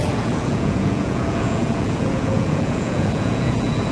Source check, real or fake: fake